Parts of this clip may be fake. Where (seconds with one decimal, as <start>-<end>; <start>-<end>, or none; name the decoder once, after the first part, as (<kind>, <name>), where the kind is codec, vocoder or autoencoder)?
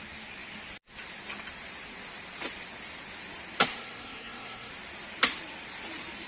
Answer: 3.7-4.7 (codec, SNAC)